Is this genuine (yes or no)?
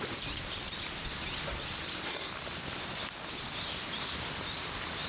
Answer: yes